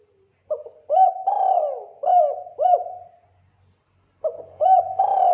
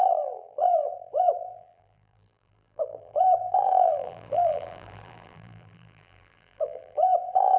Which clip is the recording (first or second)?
first